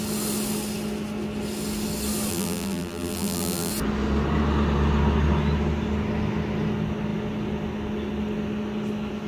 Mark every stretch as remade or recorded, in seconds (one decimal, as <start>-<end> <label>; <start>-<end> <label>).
0.0-2.3 recorded; 2.3-3.7 remade; 3.7-9.3 recorded